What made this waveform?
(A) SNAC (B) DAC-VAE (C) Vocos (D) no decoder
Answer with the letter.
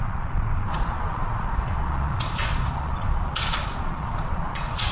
C